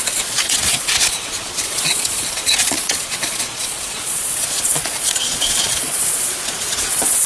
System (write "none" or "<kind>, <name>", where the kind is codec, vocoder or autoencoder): vocoder, Vocos